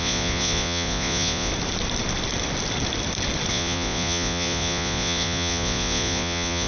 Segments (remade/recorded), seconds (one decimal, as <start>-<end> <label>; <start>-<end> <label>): 0.0-1.5 remade; 1.5-3.5 recorded; 3.5-6.7 remade